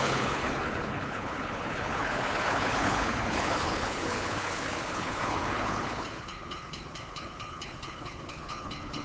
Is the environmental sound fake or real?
fake